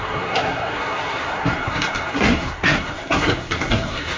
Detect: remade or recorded remade